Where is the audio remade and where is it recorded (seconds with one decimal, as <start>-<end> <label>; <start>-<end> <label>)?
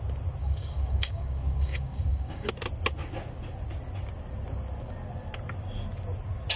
0.0-0.4 recorded; 0.4-2.5 remade; 2.5-6.6 recorded